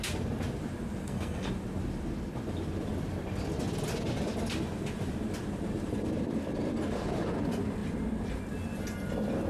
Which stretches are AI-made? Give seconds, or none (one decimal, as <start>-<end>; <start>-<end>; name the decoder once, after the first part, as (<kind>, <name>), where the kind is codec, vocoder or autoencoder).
1.0-1.5 (codec, SNAC)